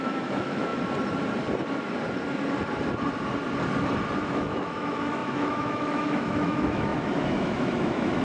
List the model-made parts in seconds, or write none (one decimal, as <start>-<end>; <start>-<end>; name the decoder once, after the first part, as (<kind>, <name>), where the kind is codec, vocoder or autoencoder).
0.0-0.7 (autoencoder, DAC-VAE); 4.2-8.2